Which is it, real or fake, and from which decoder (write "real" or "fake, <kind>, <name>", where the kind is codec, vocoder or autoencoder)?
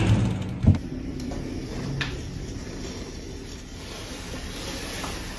real